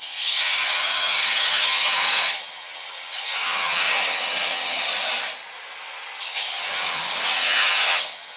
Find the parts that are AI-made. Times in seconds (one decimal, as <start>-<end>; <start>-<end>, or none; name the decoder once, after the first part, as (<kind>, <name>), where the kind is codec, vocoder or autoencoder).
0.0-4.9 (vocoder, HiFi-GAN); 6.2-8.4